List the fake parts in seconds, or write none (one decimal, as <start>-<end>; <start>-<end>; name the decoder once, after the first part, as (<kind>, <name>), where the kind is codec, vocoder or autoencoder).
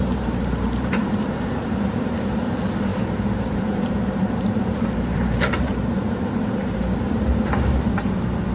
0.0-8.5 (vocoder, BigVGAN v2)